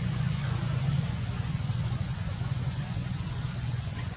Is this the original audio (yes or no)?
no